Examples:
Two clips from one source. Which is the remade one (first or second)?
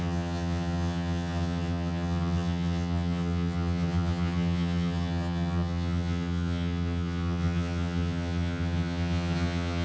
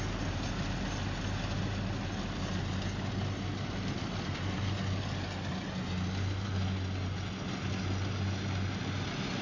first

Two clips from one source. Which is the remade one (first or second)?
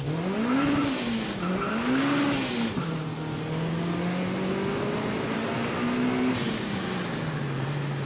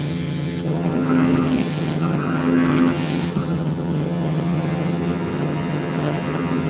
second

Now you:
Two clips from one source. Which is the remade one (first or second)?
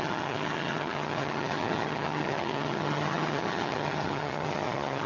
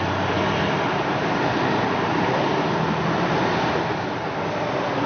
first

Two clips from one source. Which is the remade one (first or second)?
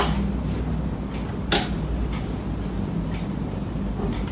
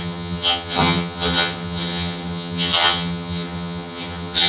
second